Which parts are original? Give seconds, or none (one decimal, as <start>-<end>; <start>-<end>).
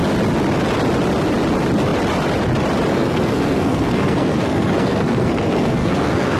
0.0-2.9